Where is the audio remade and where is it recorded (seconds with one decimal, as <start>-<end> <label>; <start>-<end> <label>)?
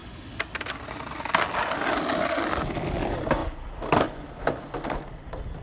0.0-5.6 recorded